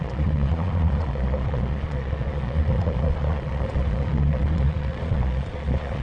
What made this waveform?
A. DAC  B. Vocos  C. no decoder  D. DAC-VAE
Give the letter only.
B